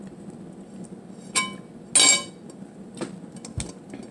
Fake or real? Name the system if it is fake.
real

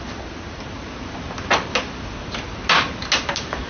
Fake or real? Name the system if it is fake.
real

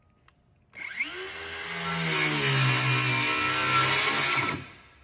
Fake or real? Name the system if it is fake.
real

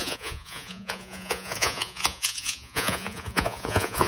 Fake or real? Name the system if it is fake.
fake, vocoder, Vocos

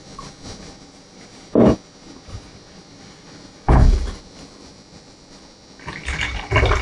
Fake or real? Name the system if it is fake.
real